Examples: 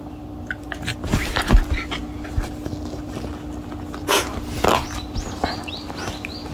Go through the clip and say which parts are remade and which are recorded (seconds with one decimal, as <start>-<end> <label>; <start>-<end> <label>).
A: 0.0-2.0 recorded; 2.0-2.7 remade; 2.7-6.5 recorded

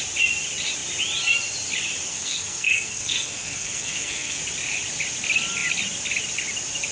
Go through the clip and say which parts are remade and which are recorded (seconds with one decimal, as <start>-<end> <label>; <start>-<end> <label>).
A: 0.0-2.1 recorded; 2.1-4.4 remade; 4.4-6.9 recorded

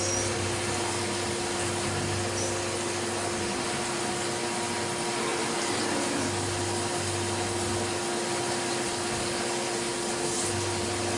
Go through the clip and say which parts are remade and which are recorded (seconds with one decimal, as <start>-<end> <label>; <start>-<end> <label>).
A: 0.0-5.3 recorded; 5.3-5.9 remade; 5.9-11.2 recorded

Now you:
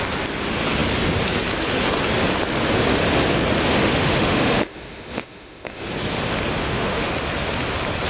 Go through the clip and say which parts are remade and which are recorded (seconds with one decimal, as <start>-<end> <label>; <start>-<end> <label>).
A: 0.0-3.8 recorded; 3.8-5.9 remade; 5.9-6.6 recorded; 6.6-7.1 remade; 7.1-8.1 recorded

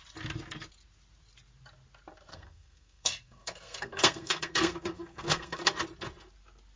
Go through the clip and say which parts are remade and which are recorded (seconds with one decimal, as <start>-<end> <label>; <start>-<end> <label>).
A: 0.0-2.3 recorded; 2.3-5.6 remade; 5.6-6.8 recorded